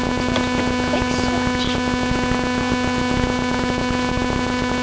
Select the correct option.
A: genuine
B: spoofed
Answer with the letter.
A